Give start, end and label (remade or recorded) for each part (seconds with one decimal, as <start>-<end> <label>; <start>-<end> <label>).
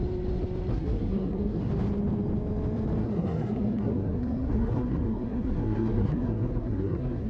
0.0-0.7 recorded; 0.7-1.7 remade; 1.7-3.0 recorded; 3.0-7.3 remade